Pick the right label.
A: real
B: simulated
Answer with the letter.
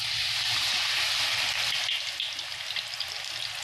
A